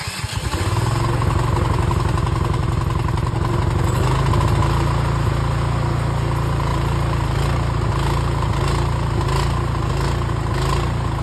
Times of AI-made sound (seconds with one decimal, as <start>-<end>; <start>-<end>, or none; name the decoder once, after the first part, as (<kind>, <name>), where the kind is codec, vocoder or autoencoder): none